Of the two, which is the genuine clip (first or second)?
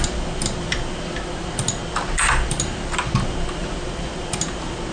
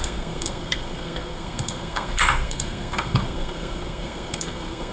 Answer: first